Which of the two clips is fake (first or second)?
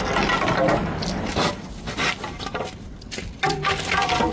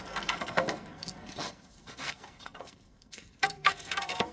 second